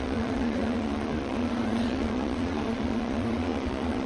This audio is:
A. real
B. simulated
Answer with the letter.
B